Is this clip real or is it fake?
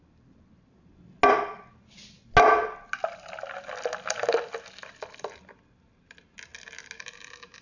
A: real